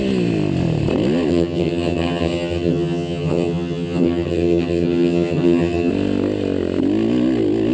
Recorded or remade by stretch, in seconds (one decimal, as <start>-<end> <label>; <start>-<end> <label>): 0.0-1.3 recorded; 1.3-5.9 remade; 5.9-7.7 recorded